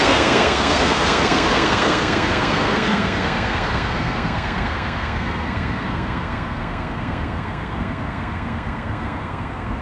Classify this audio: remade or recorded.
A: remade